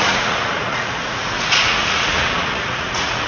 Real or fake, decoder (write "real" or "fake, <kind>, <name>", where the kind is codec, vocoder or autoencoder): fake, vocoder, Vocos